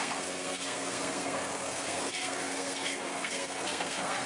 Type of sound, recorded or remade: remade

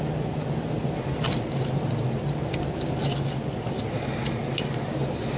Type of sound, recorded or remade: recorded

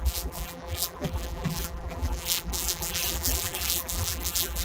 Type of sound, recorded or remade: remade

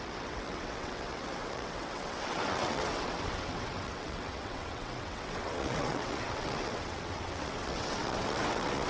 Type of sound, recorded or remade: remade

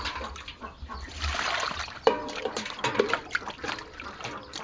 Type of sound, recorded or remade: recorded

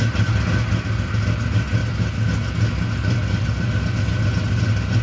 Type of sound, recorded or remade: recorded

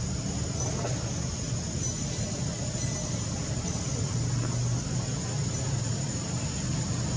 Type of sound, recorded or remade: recorded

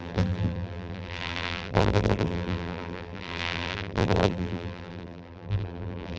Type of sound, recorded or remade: remade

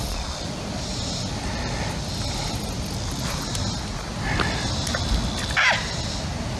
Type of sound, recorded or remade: recorded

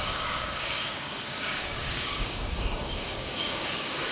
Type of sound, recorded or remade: remade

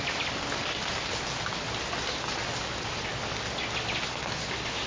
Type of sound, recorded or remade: recorded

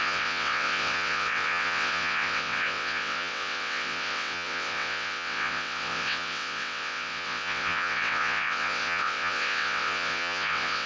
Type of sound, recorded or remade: remade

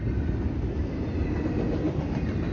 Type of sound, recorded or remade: recorded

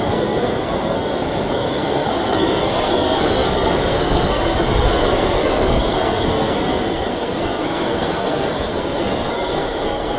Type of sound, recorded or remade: remade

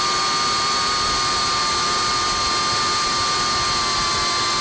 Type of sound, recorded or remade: recorded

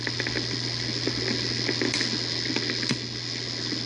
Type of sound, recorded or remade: recorded